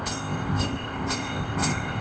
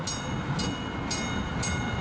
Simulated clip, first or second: first